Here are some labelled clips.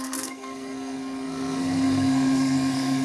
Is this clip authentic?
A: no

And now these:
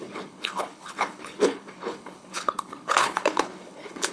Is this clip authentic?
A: no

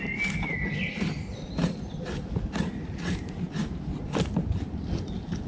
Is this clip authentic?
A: yes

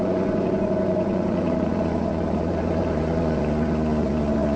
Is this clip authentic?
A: no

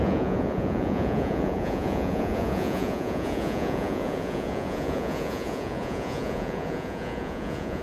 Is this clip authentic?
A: no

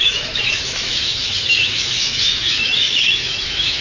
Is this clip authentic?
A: no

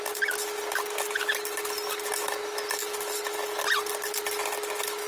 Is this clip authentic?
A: yes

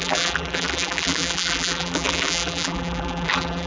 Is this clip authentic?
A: no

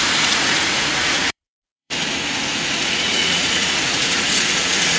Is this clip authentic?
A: no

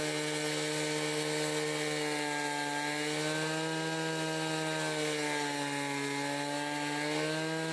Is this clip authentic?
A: yes